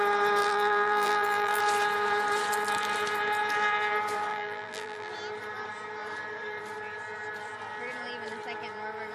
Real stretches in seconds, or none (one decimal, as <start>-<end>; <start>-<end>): 0.0-0.4; 1.6-4.3; 5.1-9.1